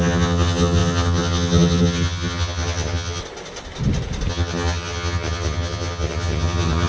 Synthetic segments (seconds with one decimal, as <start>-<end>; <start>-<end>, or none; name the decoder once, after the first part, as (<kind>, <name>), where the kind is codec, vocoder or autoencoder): 0.0-3.2 (vocoder, HiFi-GAN); 4.3-6.9